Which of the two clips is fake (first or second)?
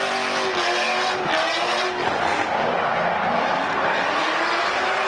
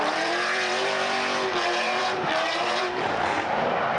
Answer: second